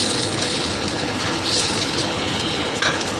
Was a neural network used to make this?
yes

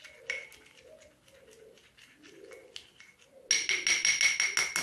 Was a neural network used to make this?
no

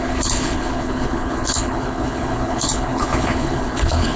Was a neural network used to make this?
yes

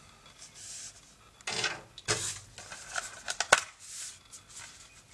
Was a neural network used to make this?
no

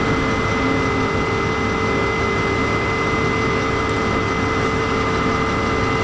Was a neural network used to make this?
no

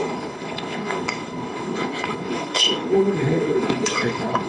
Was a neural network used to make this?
yes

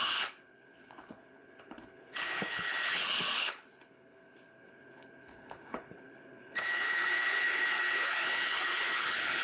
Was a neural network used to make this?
yes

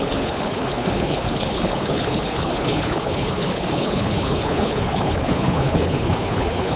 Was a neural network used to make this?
yes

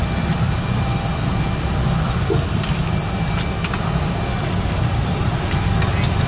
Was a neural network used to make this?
no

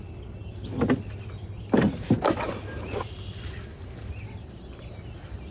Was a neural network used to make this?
no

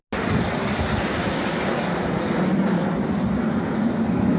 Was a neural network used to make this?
no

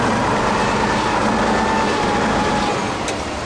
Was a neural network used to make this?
no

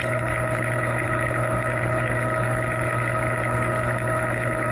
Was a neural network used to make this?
yes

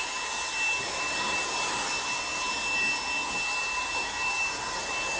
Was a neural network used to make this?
no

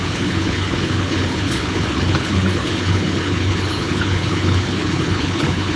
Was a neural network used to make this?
yes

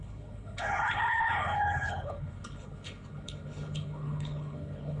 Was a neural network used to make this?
yes